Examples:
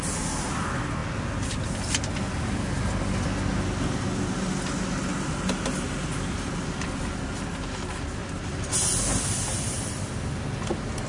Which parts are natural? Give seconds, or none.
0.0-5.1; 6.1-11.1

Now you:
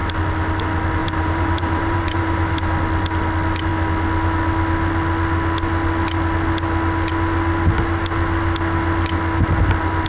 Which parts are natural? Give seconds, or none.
0.0-1.0; 2.7-10.1